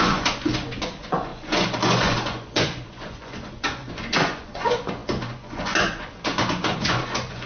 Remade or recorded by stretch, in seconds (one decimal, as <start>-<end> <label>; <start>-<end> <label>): 0.0-7.5 remade